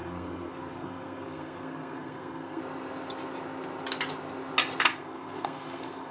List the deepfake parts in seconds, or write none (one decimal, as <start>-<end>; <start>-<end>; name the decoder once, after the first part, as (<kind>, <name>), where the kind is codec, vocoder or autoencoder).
0.0-2.6 (codec, SNAC); 4.8-6.1